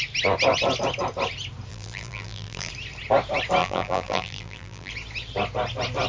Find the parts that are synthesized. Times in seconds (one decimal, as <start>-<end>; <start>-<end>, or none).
1.7-2.7; 3.6-4.9